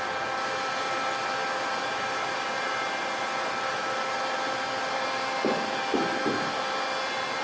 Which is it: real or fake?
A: real